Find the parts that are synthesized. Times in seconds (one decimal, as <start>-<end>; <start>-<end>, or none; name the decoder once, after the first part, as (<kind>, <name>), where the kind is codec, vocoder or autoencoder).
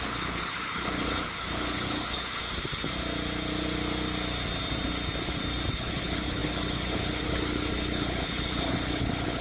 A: 0.0-2.4 (codec, HILCodec); 5.7-9.4